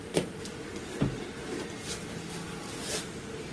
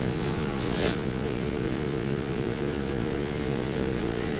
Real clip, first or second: first